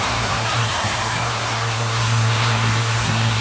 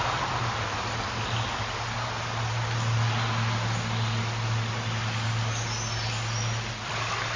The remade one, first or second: first